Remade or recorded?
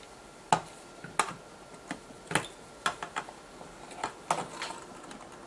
recorded